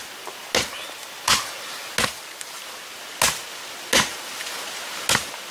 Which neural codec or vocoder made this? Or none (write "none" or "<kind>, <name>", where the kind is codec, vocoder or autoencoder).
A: none